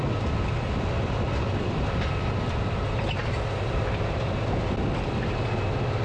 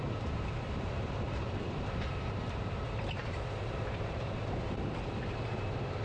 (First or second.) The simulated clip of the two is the second